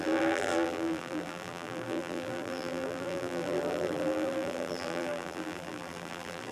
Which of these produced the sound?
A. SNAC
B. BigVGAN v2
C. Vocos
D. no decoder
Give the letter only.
B